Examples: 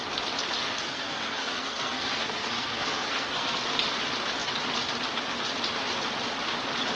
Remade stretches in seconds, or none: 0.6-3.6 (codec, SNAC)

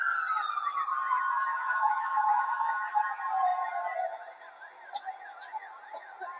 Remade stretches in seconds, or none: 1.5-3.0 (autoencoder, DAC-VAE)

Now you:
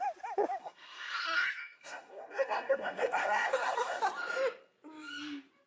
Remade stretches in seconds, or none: 0.6-4.0 (codec, SNAC)